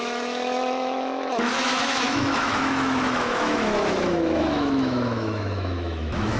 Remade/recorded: remade